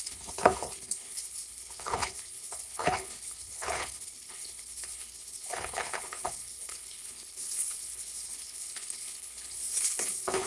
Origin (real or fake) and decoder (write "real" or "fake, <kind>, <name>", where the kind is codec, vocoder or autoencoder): fake, codec, HILCodec